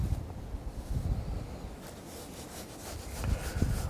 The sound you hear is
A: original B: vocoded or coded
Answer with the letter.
A